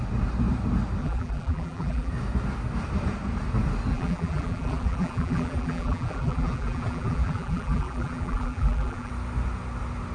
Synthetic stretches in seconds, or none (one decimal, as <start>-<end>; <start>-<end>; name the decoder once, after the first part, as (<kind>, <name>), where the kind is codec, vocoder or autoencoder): 1.0-2.1 (vocoder, BigVGAN v2); 3.9-9.1